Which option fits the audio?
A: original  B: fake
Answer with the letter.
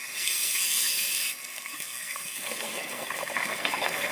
B